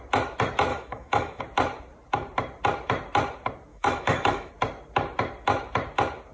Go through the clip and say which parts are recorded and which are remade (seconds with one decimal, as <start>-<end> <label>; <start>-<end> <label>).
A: 0.0-0.7 recorded; 0.7-1.4 remade; 1.4-3.7 recorded; 3.7-4.5 remade; 4.5-6.3 recorded